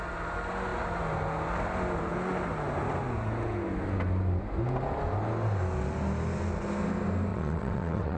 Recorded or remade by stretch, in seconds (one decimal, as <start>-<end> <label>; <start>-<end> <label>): 0.0-7.3 recorded; 7.3-8.2 remade